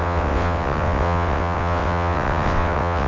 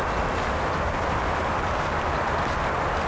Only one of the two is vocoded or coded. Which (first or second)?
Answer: first